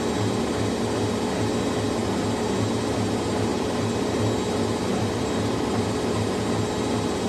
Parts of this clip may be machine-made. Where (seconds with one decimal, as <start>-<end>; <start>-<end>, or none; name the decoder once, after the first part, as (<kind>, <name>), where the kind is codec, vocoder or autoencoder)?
3.5-4.2 (vocoder, BigVGAN v2); 4.9-5.8

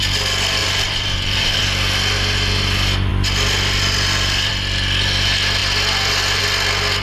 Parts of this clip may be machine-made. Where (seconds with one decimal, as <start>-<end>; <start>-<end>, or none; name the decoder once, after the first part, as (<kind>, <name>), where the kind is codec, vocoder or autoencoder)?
0.6-1.6 (vocoder, BigVGAN v2)

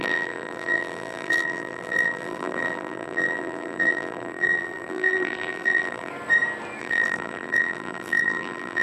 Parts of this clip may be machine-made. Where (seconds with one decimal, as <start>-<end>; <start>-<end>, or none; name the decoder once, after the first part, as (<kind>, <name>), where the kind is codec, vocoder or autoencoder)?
0.0-6.1 (vocoder, BigVGAN v2); 6.8-8.8